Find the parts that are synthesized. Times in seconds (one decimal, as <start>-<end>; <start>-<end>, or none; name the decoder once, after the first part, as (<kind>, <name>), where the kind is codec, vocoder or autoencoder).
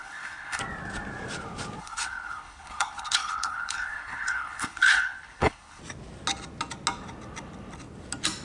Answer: 0.0-0.6 (codec, HILCodec); 1.8-5.8